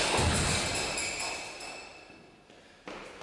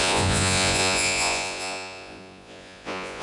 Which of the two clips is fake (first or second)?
second